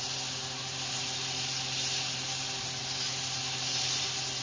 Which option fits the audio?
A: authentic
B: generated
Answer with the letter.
A